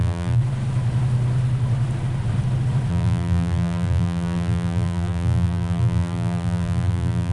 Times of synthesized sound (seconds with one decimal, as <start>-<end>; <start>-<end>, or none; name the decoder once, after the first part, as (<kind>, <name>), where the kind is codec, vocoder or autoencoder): 0.0-0.4 (vocoder, BigVGAN v2); 2.9-7.3